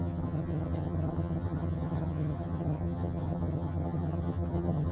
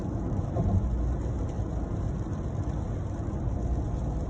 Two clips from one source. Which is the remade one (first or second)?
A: first